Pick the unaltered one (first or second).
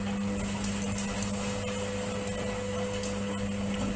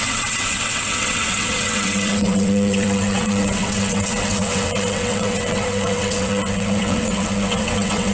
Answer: first